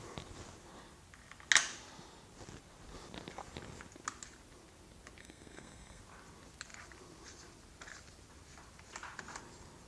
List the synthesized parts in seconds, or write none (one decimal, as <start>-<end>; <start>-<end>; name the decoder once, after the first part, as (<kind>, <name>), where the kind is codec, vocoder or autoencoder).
5.2-6.0 (codec, SNAC)